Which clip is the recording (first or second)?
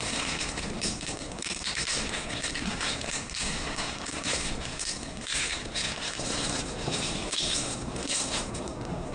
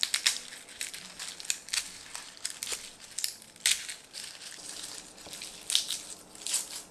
second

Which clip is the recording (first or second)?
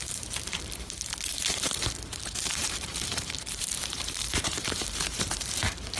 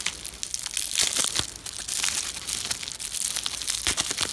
second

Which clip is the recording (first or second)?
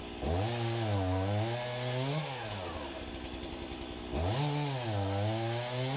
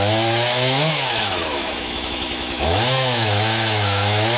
first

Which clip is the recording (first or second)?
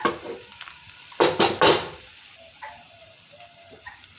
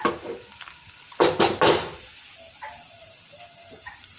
second